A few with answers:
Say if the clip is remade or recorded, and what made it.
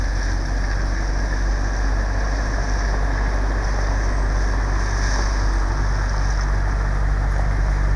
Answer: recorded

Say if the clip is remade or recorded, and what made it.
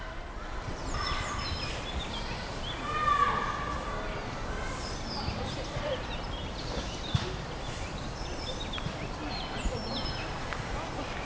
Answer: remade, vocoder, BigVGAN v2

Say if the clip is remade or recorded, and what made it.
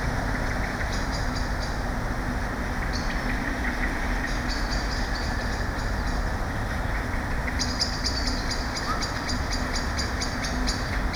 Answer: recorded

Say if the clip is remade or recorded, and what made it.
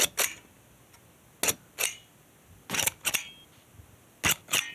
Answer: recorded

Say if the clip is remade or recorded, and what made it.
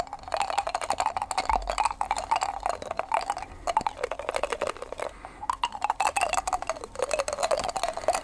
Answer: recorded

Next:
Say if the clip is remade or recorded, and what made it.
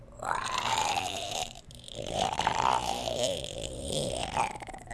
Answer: remade, vocoder, BigVGAN v2